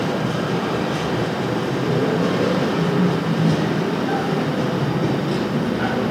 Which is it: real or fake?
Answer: fake